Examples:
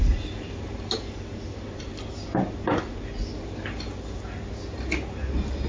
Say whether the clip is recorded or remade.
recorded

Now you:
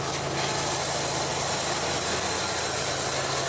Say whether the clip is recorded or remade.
recorded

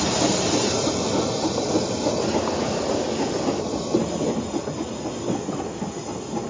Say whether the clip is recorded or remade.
recorded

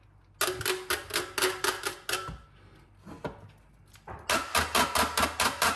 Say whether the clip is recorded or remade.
recorded